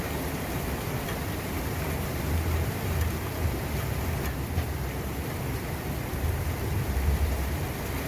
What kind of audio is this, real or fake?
fake